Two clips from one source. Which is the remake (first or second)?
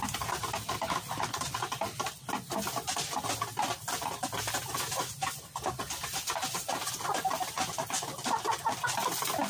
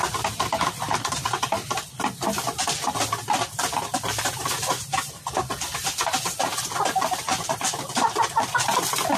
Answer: second